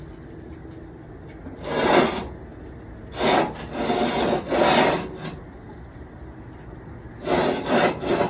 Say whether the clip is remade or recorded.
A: recorded